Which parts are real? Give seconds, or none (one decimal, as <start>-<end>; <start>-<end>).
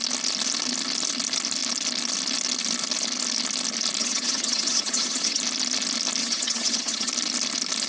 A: 0.0-4.0; 5.4-6.2; 7.1-7.9